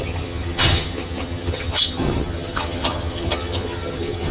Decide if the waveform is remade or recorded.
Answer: remade